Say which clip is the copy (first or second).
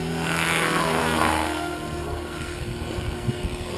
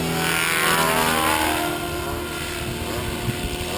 first